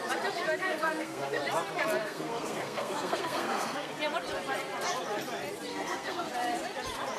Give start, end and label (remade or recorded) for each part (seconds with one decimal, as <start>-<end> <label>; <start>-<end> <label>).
0.0-0.6 recorded; 0.6-1.4 remade; 1.4-2.0 recorded; 2.0-3.9 remade; 3.9-5.7 recorded; 5.7-6.3 remade; 6.3-7.2 recorded